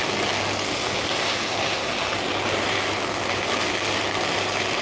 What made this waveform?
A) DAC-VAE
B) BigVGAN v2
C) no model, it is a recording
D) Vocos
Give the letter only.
C